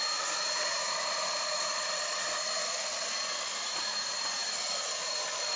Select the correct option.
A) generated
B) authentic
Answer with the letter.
B